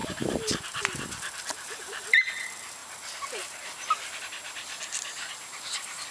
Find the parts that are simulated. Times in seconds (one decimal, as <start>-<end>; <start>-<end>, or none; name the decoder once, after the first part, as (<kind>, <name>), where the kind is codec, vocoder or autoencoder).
0.0-2.0 (vocoder, BigVGAN v2); 2.8-4.2